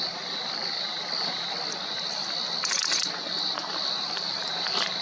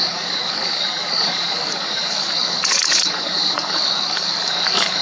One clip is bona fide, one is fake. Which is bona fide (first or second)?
first